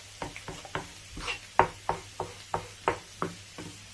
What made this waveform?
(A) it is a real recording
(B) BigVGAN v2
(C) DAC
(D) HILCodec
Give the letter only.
A